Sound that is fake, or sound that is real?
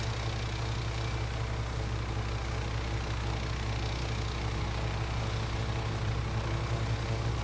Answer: real